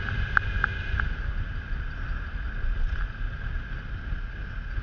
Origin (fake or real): real